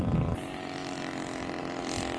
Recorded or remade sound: recorded